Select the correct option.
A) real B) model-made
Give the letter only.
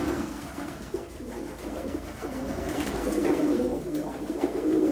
B